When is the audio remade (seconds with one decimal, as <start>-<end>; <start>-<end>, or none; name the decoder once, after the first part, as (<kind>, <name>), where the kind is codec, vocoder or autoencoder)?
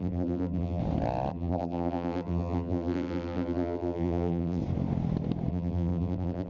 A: 0.0-0.8 (vocoder, BigVGAN v2); 1.3-4.6; 5.5-6.5